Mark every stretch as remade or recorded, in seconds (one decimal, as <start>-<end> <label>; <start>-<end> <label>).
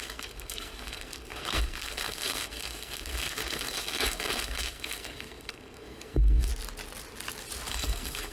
0.0-6.5 remade; 6.5-7.7 recorded; 7.7-8.3 remade